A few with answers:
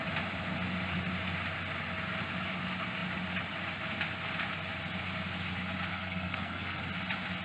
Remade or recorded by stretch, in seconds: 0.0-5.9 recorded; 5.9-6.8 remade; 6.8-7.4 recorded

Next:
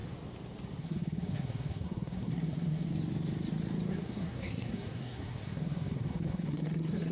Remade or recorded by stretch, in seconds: 0.0-0.8 recorded; 0.8-2.9 remade; 2.9-3.9 recorded; 3.9-7.1 remade